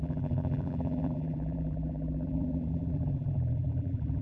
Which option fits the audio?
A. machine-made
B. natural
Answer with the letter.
A